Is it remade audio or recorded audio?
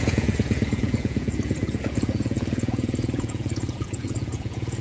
remade